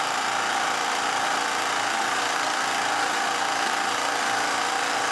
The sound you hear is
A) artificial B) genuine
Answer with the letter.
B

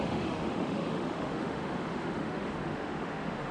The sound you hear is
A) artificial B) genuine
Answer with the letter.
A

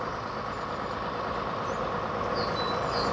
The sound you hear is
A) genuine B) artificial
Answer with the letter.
A